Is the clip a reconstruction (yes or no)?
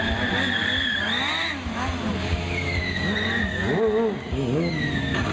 no